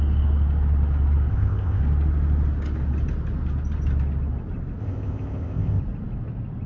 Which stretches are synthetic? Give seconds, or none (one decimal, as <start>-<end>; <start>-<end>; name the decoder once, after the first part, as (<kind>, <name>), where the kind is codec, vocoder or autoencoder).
1.3-1.8 (codec, ZipCodec); 4.8-5.8